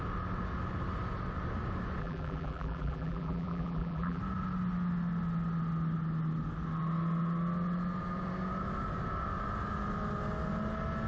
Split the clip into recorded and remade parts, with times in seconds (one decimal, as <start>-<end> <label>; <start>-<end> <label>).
0.0-2.0 recorded; 2.0-4.2 remade; 4.2-11.1 recorded